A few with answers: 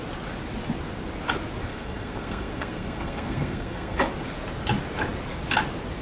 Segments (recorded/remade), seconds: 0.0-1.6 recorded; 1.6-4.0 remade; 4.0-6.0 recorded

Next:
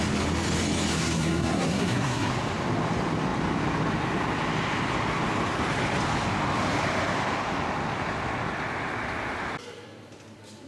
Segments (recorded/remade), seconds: 0.0-0.9 recorded; 0.9-2.3 remade; 2.3-10.7 recorded

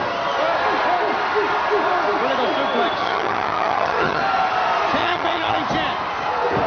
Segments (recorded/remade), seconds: 0.0-3.0 recorded; 3.0-4.2 remade; 4.2-5.0 recorded; 5.0-5.6 remade; 5.6-6.7 recorded

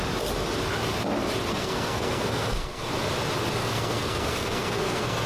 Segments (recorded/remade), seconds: 0.0-1.5 recorded; 1.5-2.9 remade; 2.9-3.6 recorded; 3.6-5.3 remade

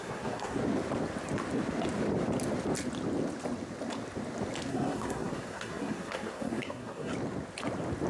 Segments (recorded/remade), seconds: 0.0-0.6 remade; 0.6-4.7 recorded; 4.7-7.1 remade; 7.1-8.1 recorded